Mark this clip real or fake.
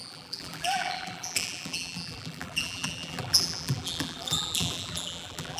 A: fake